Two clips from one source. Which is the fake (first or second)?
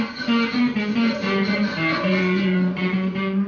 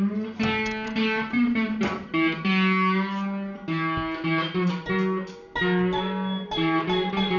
first